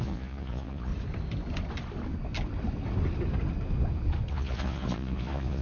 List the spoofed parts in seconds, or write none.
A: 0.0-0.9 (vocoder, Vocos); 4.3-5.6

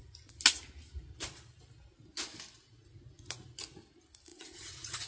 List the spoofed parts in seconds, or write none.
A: 4.3-5.1 (vocoder, Vocos)

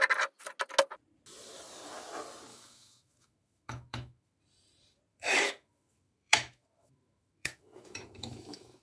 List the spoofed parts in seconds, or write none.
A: 2.5-4.4 (autoencoder, DAC-VAE); 5.1-8.8

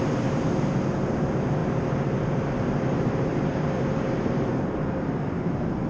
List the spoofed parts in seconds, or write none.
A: 3.3-4.5 (vocoder, BigVGAN v2)

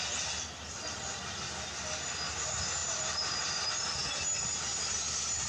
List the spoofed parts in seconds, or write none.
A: 2.8-3.6 (vocoder, BigVGAN v2); 4.7-5.5